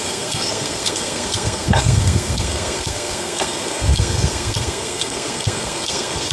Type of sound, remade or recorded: remade